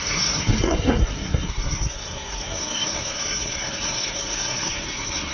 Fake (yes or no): yes